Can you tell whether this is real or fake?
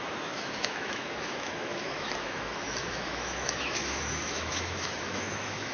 fake